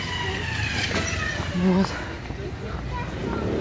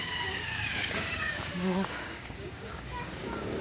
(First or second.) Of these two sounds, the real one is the first